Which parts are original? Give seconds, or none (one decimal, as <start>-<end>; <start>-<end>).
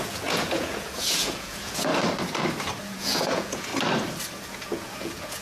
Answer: 1.9-2.8; 3.7-4.5